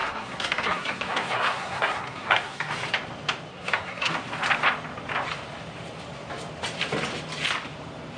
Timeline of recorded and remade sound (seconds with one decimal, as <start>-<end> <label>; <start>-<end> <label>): 0.0-2.7 remade; 2.7-3.5 recorded; 3.5-4.1 remade; 4.1-8.2 recorded